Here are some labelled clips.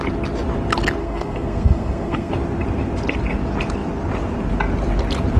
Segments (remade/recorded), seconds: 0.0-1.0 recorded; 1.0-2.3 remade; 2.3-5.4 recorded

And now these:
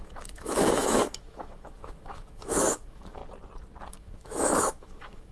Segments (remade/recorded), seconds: 0.0-3.2 remade; 3.2-3.9 recorded; 3.9-5.3 remade

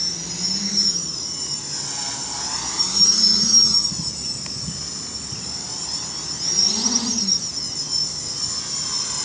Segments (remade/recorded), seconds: 0.0-9.2 recorded